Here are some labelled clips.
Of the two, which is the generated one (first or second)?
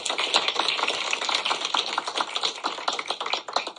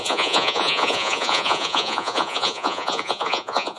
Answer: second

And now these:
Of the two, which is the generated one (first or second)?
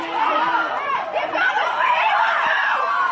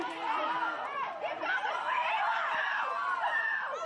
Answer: first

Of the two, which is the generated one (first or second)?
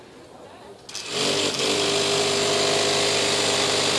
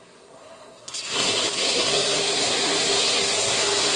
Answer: second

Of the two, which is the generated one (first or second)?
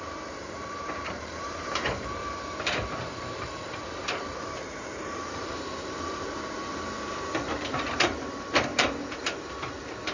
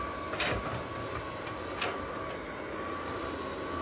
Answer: first